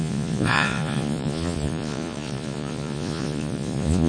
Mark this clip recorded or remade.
remade